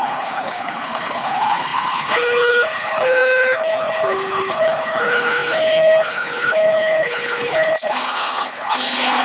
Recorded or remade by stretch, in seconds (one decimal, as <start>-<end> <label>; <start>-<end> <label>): 0.0-9.2 remade